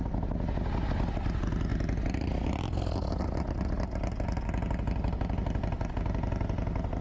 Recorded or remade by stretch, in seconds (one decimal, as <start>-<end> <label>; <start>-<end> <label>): 0.0-7.0 recorded